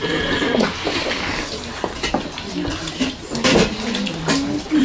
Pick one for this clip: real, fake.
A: real